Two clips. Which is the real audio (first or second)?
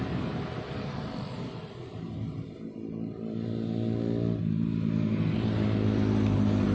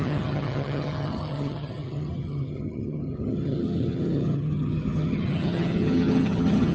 first